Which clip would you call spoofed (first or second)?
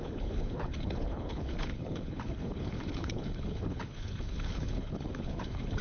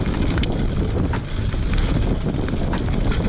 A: first